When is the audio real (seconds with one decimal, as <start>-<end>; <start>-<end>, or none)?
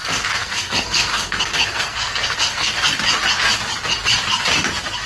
2.7-5.1